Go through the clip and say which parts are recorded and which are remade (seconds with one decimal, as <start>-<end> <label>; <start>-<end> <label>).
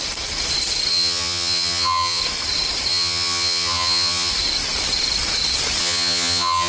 0.0-0.9 recorded; 0.9-2.2 remade; 2.2-2.9 recorded; 2.9-4.3 remade; 4.3-5.8 recorded; 5.8-6.7 remade